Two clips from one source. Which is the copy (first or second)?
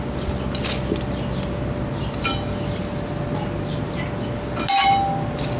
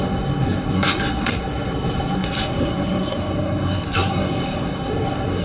second